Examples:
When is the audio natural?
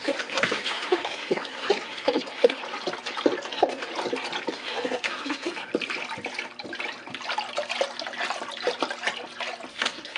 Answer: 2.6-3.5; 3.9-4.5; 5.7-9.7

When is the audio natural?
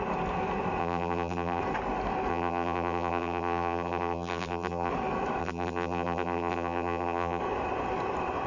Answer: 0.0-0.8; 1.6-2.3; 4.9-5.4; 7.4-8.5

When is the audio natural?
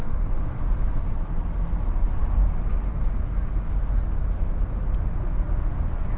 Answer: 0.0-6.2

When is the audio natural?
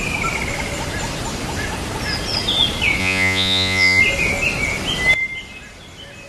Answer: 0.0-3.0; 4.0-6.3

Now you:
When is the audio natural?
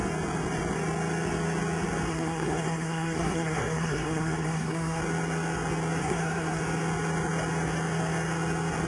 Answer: 0.0-2.1; 5.0-6.0; 6.6-8.9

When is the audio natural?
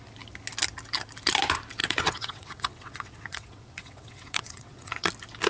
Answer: 0.0-1.8; 5.1-5.5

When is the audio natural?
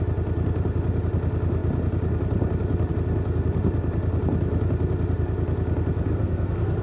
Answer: 0.0-6.1